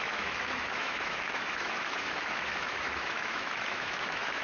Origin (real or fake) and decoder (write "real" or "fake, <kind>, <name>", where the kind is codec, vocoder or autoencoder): fake, autoencoder, DAC-VAE